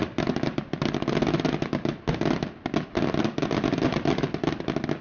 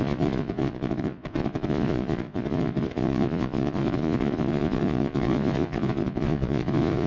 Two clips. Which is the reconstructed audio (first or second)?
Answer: second